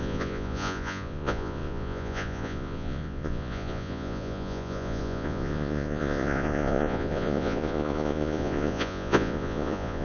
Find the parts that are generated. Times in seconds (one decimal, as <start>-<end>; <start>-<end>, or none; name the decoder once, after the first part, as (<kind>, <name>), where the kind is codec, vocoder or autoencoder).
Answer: 0.0-10.0 (vocoder, Vocos)